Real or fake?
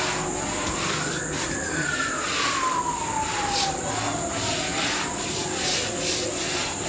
real